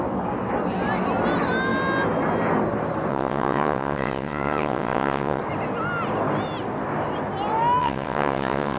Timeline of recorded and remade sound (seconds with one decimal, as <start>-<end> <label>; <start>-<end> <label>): 0.0-3.1 recorded; 3.1-5.4 remade; 5.4-7.8 recorded; 7.8-8.8 remade